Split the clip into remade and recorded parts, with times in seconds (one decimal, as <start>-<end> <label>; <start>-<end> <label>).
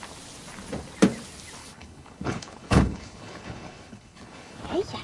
0.0-1.6 recorded; 1.6-4.6 remade; 4.6-5.0 recorded